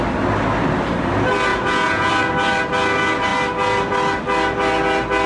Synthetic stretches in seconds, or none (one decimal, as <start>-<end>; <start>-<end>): 1.5-2.1